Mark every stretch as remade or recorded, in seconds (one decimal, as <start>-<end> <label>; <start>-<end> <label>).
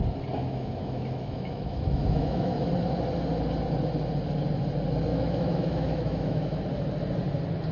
0.0-0.4 recorded; 0.4-2.7 remade; 2.7-5.1 recorded; 5.1-6.6 remade; 6.6-7.7 recorded